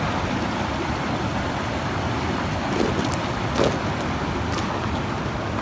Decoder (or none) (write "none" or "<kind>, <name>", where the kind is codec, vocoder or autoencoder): none